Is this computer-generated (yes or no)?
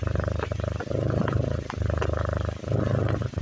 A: no